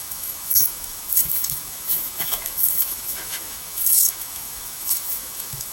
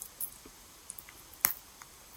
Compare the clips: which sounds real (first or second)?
second